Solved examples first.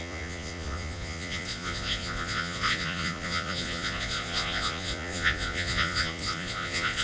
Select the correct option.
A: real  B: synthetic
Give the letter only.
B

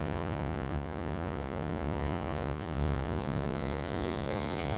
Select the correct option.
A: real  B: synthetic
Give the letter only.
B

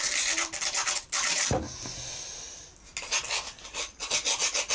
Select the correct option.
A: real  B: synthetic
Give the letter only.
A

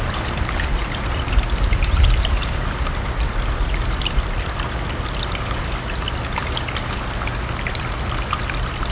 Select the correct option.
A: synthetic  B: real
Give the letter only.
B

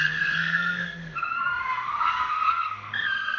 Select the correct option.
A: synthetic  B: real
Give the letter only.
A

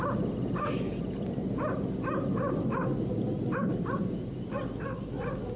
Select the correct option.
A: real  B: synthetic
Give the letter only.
A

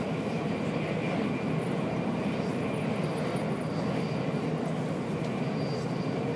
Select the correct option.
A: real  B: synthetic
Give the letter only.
A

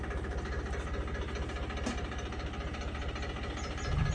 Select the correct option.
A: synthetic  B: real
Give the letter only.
B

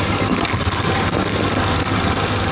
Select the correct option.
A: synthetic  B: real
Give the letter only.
B